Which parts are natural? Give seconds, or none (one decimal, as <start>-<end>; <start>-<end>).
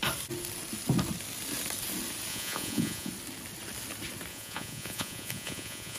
0.0-2.3; 3.1-4.3